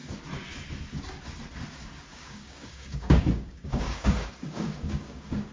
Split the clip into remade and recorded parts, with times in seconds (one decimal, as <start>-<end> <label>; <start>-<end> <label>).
0.0-2.1 recorded; 2.1-5.5 remade